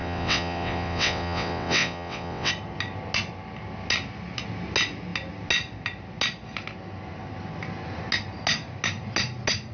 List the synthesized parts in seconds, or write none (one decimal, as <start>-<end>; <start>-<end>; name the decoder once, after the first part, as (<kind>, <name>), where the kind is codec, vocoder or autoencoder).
0.0-2.5 (vocoder, WaveNeXt)